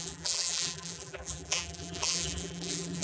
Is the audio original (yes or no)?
no